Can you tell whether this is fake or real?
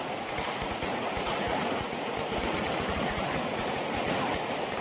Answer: fake